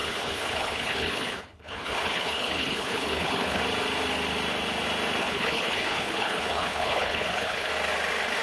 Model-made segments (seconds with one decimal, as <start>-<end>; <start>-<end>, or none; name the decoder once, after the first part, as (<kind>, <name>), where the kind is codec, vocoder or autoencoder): 0.0-3.6 (codec, HILCodec); 5.2-7.7

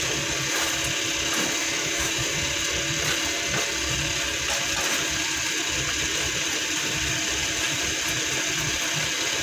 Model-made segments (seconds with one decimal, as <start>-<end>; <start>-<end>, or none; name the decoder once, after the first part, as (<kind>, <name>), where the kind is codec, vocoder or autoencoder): 1.6-2.3 (autoencoder, DAC-VAE)

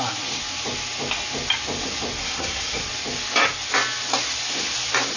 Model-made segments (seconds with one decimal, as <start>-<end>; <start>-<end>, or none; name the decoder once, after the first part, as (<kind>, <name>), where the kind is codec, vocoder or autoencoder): 2.2-2.8 (codec, SNAC)

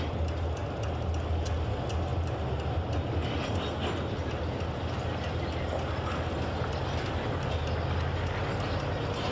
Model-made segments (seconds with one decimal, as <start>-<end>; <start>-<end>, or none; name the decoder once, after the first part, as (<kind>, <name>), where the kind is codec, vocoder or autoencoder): none

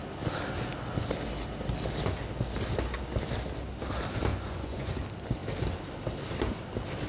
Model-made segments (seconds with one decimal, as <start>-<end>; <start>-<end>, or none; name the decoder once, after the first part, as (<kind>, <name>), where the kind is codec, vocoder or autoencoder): 4.3-4.9 (vocoder, Vocos)

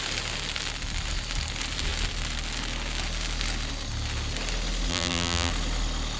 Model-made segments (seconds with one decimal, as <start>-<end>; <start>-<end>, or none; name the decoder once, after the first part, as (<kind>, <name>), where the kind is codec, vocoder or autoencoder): 4.9-5.5 (vocoder, BigVGAN v2)

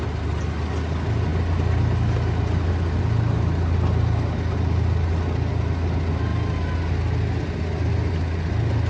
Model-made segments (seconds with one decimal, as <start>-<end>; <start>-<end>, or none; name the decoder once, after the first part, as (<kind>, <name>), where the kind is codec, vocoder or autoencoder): none

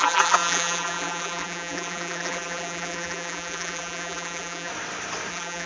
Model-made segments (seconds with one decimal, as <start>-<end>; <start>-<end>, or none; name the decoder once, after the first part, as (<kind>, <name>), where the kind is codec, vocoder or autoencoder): 0.0-4.7 (vocoder, BigVGAN v2); 5.3-5.7